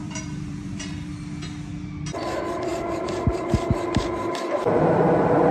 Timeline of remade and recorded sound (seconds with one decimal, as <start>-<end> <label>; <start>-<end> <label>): 0.0-1.1 remade; 1.1-2.7 recorded; 2.7-5.5 remade